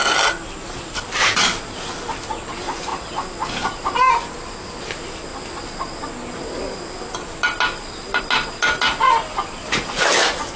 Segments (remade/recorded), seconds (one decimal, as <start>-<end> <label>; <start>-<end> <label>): 0.0-10.6 recorded